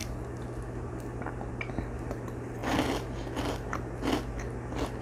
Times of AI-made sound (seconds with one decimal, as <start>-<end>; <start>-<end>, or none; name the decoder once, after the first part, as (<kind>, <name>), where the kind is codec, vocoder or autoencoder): none